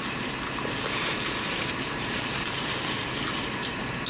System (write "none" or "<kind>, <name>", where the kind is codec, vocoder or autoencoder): vocoder, BigVGAN v2